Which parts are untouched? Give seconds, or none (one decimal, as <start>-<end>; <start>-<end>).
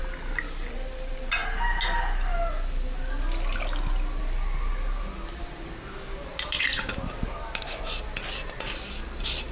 0.0-9.5